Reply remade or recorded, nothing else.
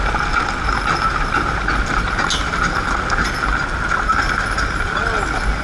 recorded